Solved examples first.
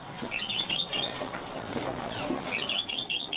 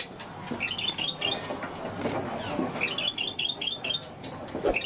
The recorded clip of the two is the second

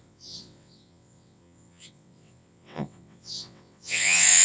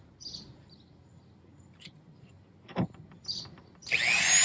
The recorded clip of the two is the second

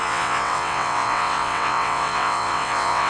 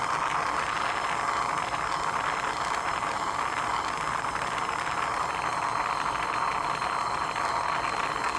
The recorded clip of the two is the second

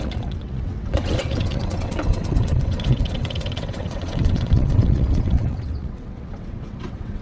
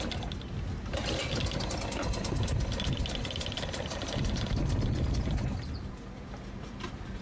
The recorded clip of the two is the second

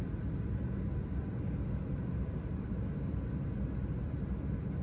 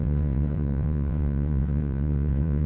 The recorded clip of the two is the first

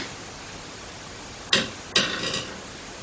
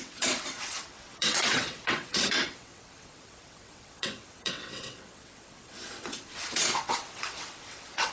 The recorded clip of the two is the first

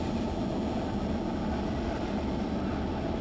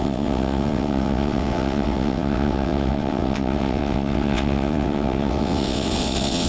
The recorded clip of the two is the first